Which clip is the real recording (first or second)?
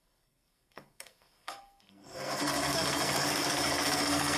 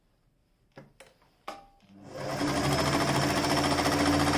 second